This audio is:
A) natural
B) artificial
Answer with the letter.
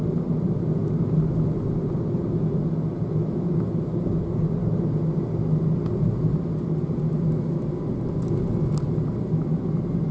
A